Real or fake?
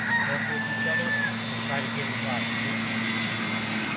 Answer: real